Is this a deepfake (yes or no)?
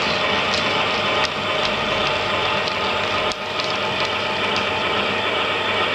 no